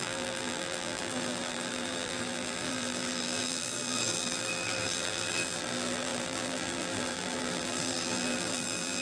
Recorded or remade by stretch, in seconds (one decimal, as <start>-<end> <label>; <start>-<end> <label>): 0.0-9.0 remade